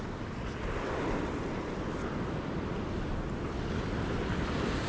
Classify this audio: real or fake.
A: real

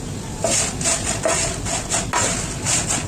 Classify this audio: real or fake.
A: real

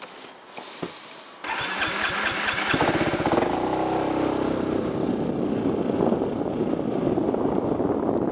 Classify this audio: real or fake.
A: real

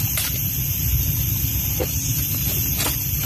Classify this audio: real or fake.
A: real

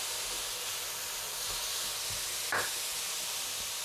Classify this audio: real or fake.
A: real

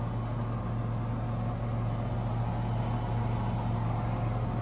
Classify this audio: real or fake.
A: real